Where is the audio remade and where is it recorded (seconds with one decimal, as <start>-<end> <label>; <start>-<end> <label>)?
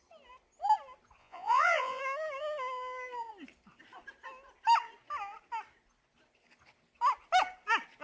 0.0-1.2 recorded; 1.2-2.0 remade; 2.0-8.0 recorded